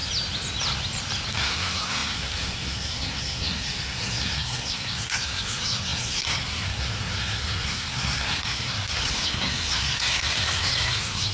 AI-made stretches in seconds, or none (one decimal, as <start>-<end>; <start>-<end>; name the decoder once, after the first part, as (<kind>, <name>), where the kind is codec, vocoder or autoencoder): 1.3-11.3 (codec, SNAC)